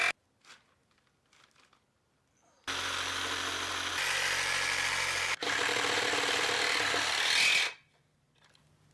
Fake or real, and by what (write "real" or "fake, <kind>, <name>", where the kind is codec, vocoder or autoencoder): real